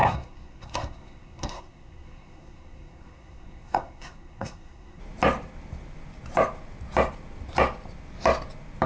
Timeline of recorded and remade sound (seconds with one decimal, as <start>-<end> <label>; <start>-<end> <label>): 0.0-5.0 remade; 5.0-8.9 recorded